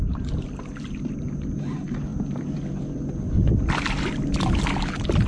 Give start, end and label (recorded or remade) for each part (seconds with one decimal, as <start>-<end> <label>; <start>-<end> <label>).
0.0-5.3 recorded